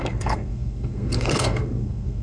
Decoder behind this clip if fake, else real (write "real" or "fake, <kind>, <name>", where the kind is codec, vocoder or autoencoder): fake, codec, SNAC